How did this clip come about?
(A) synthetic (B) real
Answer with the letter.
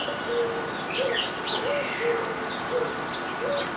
B